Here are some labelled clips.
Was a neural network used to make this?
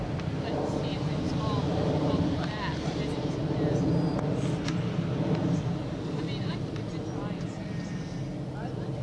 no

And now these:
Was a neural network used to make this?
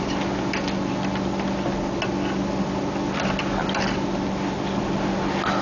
no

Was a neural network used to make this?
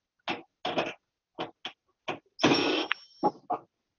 no